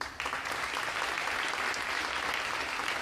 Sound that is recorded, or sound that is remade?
recorded